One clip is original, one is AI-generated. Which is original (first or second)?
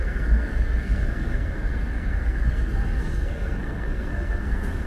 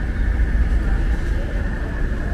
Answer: second